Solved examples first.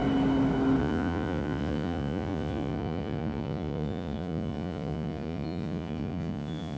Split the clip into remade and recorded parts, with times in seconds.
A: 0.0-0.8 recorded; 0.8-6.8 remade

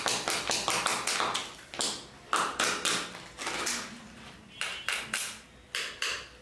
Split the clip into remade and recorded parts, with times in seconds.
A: 0.0-6.4 recorded